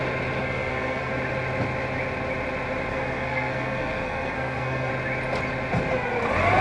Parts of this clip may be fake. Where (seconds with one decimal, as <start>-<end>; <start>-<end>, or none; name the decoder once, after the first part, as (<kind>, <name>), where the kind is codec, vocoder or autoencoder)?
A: 0.4-1.1 (codec, SNAC); 2.9-4.9